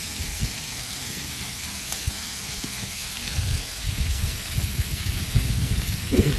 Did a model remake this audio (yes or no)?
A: yes